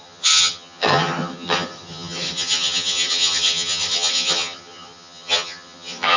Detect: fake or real fake